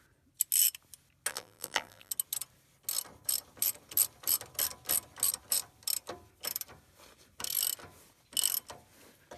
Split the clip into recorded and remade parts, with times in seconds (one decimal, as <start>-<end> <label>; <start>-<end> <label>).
0.0-1.3 recorded; 1.3-2.1 remade; 2.1-9.4 recorded